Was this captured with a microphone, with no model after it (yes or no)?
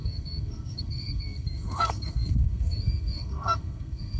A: no